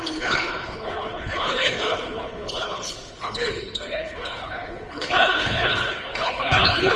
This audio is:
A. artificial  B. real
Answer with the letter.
A